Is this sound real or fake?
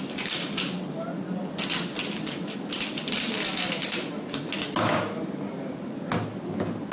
real